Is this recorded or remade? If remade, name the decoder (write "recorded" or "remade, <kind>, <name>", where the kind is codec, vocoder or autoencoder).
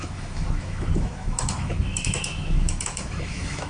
remade, autoencoder, DAC-VAE